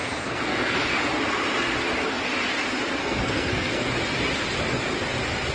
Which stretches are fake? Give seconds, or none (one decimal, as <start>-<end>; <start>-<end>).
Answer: 0.0-1.0; 3.0-3.9